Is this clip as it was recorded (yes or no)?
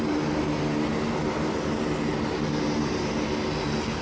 yes